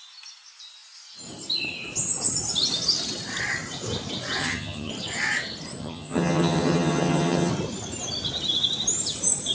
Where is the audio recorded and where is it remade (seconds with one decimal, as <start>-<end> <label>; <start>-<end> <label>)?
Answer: 0.0-4.4 recorded; 4.4-4.9 remade; 4.9-5.8 recorded; 5.8-7.5 remade; 7.5-9.5 recorded